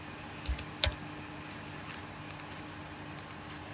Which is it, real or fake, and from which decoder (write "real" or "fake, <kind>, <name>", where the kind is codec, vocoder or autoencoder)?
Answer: real